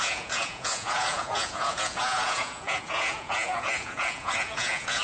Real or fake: fake